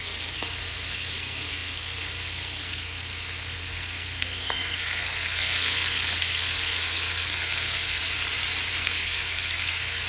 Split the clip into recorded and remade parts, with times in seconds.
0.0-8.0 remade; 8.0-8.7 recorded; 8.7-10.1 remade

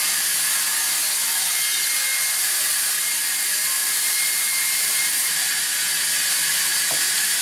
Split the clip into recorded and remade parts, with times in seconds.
0.0-3.8 recorded; 3.8-5.4 remade; 5.4-7.4 recorded